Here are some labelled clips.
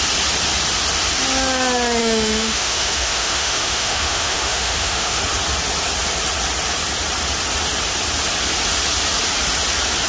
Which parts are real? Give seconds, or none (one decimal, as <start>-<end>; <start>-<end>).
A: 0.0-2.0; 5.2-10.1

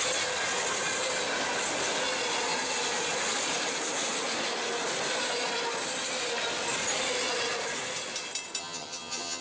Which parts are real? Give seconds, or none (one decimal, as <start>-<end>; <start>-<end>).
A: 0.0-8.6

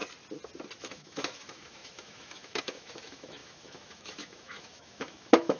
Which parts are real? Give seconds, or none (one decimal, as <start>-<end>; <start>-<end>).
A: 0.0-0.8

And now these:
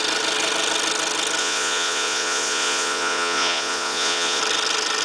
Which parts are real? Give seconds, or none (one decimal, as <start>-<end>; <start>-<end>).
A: 0.0-1.4; 4.4-5.0

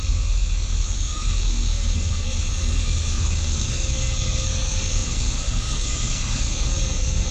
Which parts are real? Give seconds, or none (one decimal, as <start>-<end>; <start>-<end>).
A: none